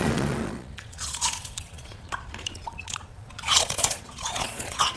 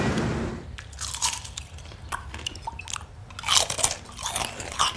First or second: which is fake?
first